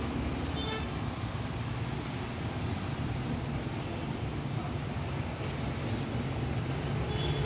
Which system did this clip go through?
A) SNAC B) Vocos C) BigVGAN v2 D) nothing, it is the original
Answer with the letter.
D